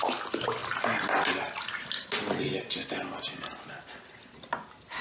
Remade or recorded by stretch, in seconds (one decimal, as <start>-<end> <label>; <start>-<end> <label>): 0.0-5.0 recorded